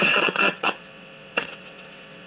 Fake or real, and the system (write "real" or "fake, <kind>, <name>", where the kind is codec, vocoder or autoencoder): fake, vocoder, WaveNeXt